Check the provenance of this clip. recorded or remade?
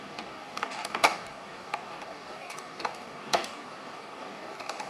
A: remade